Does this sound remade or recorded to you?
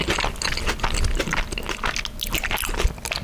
recorded